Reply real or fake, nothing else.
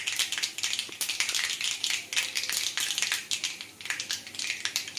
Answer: real